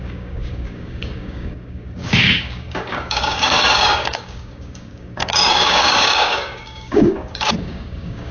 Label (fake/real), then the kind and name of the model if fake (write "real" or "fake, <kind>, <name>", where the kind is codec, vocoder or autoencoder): fake, codec, DAC